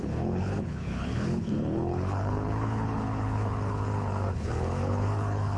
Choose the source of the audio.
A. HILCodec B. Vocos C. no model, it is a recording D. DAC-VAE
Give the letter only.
A